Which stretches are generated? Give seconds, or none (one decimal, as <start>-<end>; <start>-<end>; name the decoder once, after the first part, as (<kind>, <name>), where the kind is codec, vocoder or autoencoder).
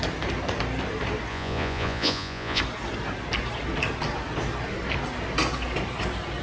1.3-2.6 (vocoder, Vocos)